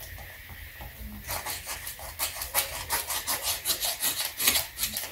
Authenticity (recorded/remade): recorded